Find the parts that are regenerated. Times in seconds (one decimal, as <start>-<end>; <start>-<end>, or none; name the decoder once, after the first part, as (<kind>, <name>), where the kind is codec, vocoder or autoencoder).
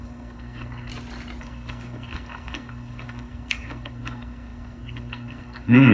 0.0-0.9 (codec, SNAC); 1.4-5.9